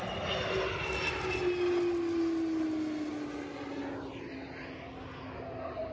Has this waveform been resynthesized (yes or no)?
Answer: no